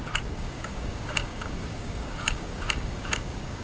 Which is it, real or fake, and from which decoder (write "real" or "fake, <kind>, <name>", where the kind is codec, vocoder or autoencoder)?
fake, codec, DAC